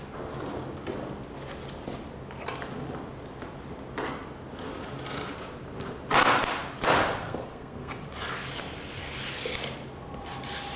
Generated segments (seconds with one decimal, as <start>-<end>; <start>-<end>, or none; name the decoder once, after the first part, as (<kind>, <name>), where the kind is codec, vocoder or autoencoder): 7.2-7.9 (codec, SNAC)